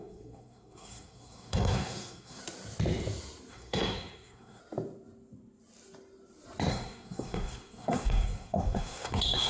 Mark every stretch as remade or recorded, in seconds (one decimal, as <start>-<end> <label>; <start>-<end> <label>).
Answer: 0.0-2.4 remade; 2.4-3.5 recorded; 3.5-4.6 remade; 4.6-6.7 recorded; 6.7-9.5 remade